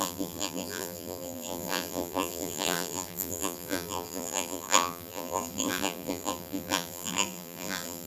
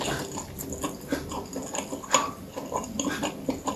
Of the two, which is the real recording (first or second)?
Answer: second